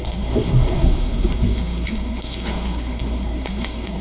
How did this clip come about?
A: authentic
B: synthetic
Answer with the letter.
B